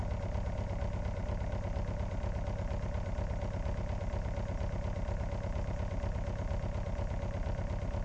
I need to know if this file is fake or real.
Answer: real